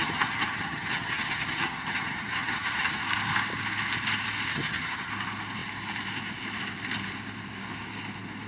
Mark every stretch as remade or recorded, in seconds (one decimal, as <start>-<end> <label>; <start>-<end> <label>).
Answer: 0.0-3.0 remade; 3.0-4.5 recorded; 4.5-5.1 remade; 5.1-8.5 recorded